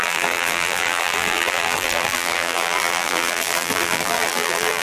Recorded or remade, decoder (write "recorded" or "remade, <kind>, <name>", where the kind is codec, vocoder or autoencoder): remade, vocoder, BigVGAN v2